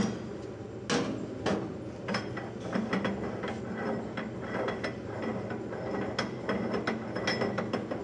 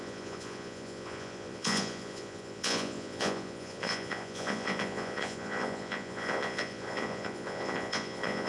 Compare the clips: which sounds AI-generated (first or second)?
second